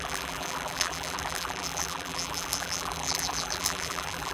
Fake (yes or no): yes